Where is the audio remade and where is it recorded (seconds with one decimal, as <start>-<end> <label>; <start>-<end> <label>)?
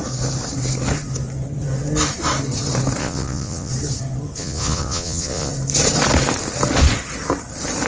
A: 0.0-3.0 recorded; 3.0-3.7 remade; 3.7-4.4 recorded; 4.4-5.5 remade; 5.5-7.9 recorded